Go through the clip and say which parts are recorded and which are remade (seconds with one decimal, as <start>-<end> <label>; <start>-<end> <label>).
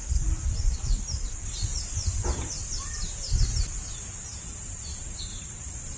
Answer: 0.0-4.3 recorded; 4.3-6.0 remade